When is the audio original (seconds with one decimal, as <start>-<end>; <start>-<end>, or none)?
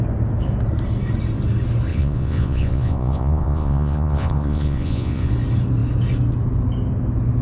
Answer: 0.0-1.9; 5.3-7.4